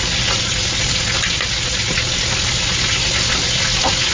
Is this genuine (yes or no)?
yes